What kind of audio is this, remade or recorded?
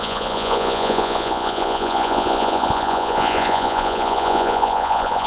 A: remade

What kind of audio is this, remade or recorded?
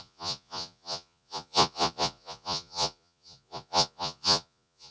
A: remade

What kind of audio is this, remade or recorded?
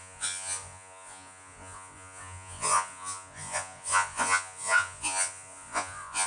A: remade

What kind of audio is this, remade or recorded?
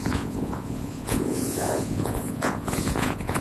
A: remade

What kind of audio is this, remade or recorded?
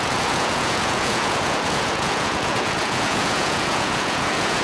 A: remade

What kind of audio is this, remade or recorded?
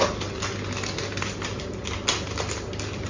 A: recorded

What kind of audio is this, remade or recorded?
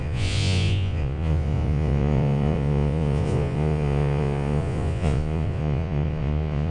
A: remade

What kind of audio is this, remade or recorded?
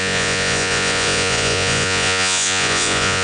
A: remade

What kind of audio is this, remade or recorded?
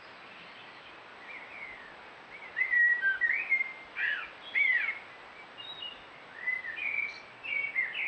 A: recorded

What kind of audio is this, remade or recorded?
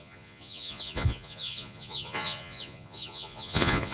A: remade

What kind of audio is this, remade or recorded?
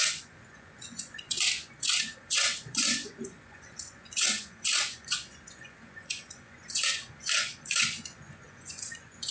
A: remade